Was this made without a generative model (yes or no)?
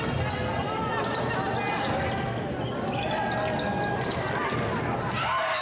yes